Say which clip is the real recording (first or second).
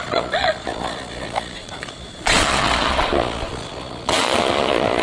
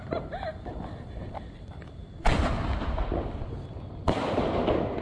second